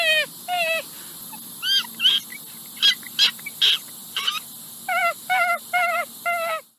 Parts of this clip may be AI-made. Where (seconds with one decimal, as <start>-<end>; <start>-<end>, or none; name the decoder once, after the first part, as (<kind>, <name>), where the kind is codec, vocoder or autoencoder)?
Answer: 5.0-6.1 (vocoder, BigVGAN v2)